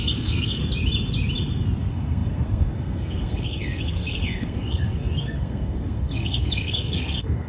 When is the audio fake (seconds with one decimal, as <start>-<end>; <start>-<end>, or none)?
0.0-0.6; 1.8-7.5